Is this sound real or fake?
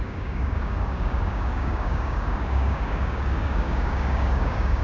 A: fake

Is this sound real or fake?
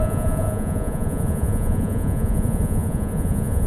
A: fake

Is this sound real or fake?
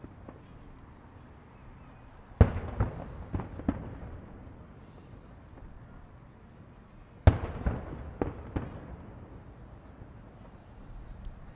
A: real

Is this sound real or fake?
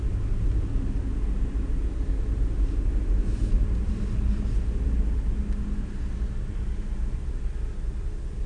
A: real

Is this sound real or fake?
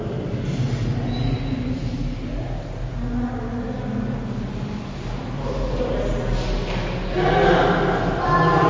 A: real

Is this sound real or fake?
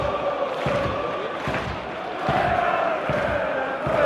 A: real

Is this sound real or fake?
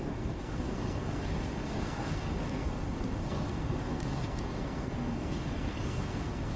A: fake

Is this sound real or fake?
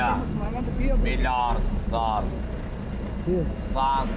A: real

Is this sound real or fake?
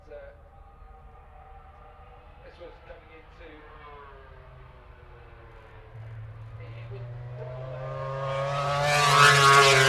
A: real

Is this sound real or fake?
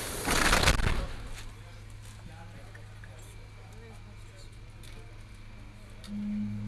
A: real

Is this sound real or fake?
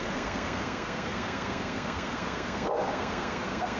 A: fake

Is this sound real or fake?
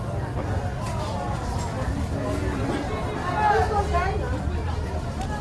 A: real